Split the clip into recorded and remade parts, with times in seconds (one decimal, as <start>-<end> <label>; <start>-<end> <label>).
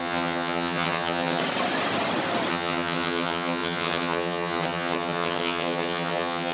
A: 0.0-1.4 remade; 1.4-2.5 recorded; 2.5-6.5 remade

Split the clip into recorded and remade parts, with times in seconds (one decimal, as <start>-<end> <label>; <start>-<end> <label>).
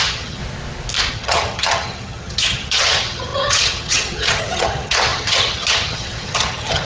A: 0.0-0.4 remade; 0.4-1.1 recorded; 1.1-6.8 remade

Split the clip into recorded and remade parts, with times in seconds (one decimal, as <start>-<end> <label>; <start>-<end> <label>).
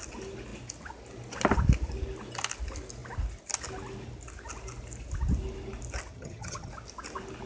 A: 0.0-6.1 recorded; 6.1-6.7 remade; 6.7-7.5 recorded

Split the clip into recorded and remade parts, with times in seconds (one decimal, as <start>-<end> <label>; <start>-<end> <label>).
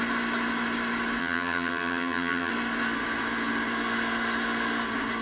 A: 0.0-1.2 recorded; 1.2-2.5 remade; 2.5-5.2 recorded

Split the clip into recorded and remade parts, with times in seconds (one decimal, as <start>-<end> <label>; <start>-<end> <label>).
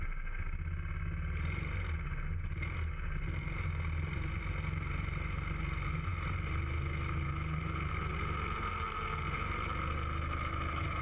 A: 0.0-11.0 recorded